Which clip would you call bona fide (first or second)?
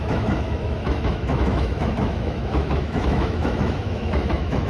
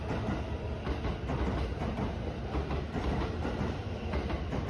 second